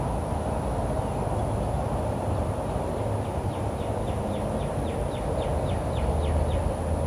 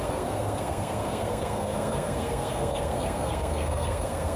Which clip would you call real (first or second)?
first